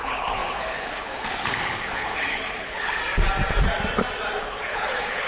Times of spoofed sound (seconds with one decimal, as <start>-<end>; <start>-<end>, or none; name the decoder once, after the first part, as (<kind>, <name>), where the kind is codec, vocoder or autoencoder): 0.0-3.0 (codec, HILCodec); 4.4-5.3